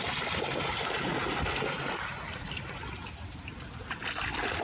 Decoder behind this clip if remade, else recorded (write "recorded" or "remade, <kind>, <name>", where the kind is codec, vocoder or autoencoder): recorded